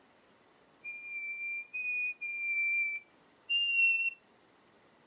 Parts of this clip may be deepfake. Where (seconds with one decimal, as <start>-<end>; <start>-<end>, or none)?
none